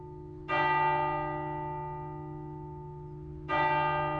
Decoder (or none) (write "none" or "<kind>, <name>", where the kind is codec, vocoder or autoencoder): none